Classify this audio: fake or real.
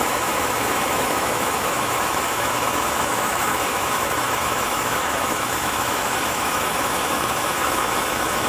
fake